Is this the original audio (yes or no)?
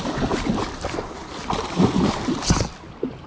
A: yes